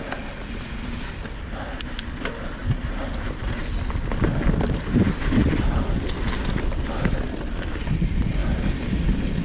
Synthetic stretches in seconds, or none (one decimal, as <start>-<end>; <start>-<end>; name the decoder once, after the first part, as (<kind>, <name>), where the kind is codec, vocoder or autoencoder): none